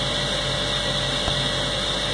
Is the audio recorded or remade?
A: recorded